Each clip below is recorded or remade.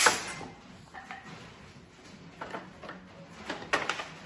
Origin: recorded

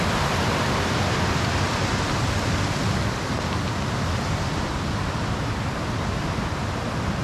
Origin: recorded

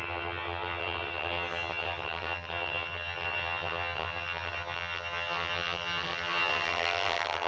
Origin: remade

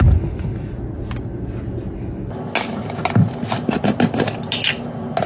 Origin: recorded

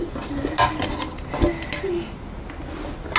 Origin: recorded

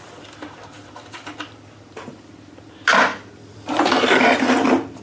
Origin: recorded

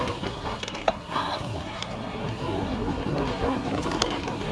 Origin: remade